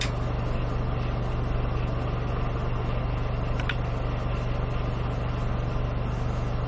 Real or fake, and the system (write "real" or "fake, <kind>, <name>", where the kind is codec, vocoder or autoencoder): real